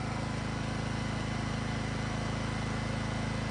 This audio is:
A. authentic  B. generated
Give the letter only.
A